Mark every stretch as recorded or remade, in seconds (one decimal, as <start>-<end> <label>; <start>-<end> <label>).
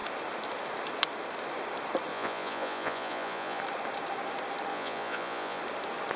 0.0-2.1 recorded; 2.1-3.6 remade; 3.6-4.7 recorded; 4.7-5.6 remade; 5.6-6.2 recorded